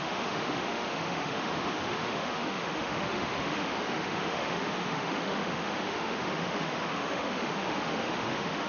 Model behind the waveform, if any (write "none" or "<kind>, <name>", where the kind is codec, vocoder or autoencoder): autoencoder, DAC-VAE